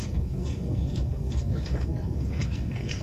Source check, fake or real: fake